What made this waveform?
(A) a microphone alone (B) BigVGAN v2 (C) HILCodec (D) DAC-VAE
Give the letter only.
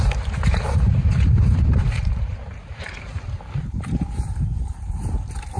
B